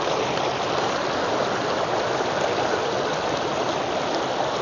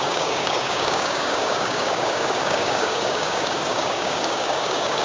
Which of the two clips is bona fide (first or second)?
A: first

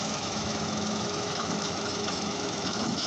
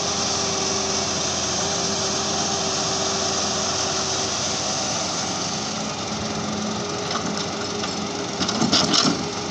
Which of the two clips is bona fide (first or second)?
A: second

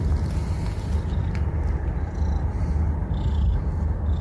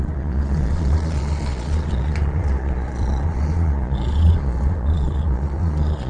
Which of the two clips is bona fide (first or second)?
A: first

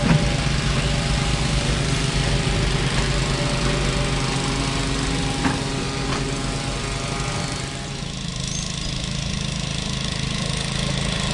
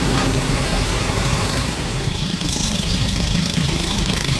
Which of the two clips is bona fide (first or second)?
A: first